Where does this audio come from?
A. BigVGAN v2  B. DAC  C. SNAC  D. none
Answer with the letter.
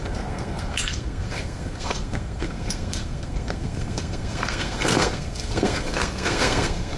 C